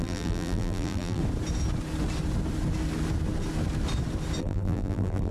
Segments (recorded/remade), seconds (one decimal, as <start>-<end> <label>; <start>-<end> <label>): 0.0-1.2 remade; 1.2-4.4 recorded; 4.4-5.3 remade